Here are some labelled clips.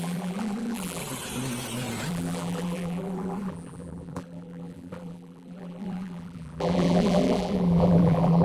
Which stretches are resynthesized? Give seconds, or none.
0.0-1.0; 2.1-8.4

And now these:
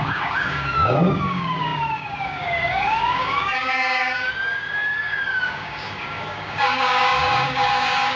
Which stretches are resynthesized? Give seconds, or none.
0.0-8.2

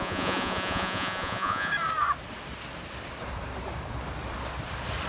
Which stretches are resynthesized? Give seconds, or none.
0.0-1.7

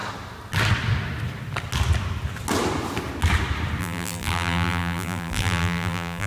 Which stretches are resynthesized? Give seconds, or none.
3.8-6.3

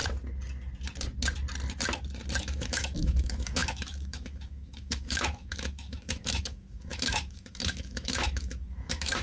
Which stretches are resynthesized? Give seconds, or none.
2.4-9.2

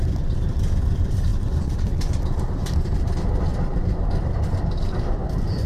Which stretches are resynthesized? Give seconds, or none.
0.0-5.7

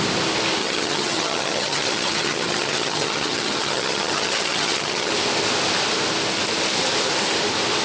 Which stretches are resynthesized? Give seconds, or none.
0.6-5.1

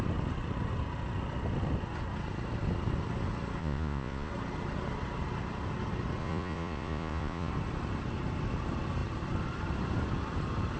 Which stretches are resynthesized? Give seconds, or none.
3.6-4.3; 6.2-7.5